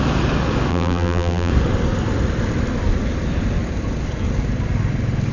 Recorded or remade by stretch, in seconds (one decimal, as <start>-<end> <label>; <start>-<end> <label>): 0.0-0.7 recorded; 0.7-1.5 remade; 1.5-5.3 recorded